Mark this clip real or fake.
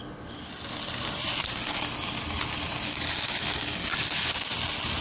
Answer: real